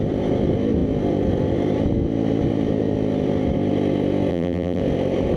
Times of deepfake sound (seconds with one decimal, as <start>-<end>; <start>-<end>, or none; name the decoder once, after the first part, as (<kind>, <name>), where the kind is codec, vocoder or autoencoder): 4.3-4.8 (vocoder, BigVGAN v2)